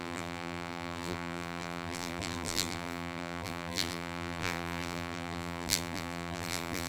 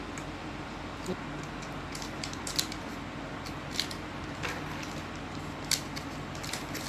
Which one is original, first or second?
second